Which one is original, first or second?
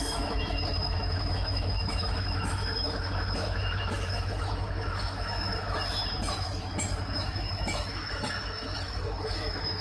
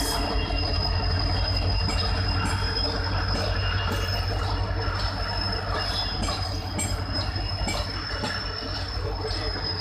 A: second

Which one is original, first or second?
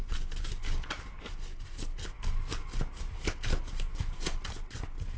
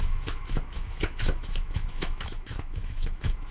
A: first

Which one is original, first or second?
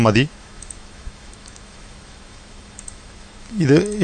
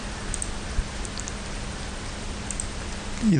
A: second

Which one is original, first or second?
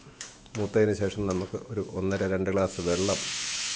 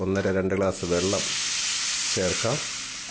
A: second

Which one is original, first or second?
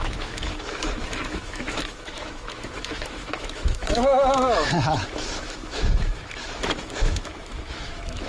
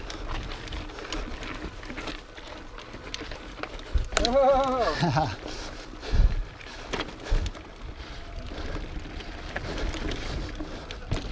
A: second